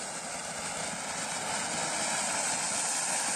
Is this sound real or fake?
real